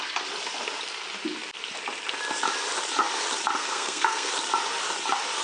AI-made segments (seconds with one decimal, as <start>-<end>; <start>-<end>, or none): 3.6-4.3

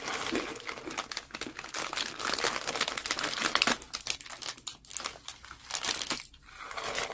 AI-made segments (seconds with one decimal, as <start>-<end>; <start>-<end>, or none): 4.9-6.4

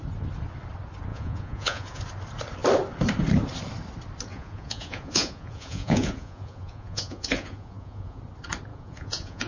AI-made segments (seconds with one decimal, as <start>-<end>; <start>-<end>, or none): 1.1-2.0; 4.3-8.2; 8.7-9.5

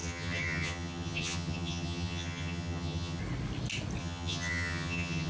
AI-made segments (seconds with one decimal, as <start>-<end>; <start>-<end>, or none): 0.0-3.2; 4.0-5.3

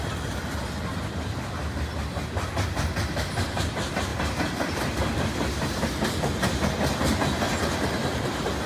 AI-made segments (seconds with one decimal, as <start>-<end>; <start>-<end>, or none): none

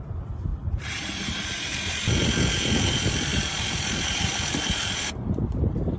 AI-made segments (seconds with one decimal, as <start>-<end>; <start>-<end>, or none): 0.5-2.0; 3.3-4.3; 5.0-6.0

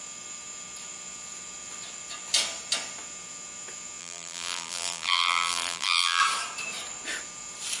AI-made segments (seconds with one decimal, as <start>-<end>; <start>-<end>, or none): 4.0-6.2

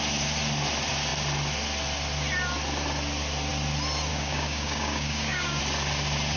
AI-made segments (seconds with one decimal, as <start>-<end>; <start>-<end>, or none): 4.1-5.6